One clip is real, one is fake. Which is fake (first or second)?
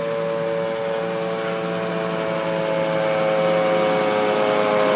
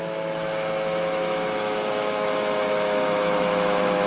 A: second